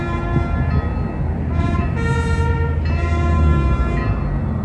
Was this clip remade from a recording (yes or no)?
no